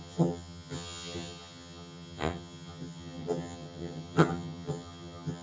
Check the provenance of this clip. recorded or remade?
remade